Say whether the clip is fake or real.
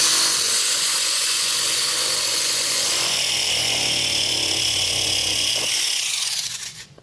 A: fake